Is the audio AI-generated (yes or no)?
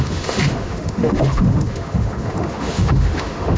yes